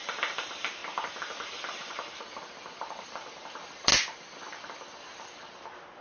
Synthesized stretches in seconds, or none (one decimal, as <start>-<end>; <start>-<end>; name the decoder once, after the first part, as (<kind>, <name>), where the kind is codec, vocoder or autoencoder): 0.0-0.8 (vocoder, BigVGAN v2); 3.0-3.9; 5.0-6.0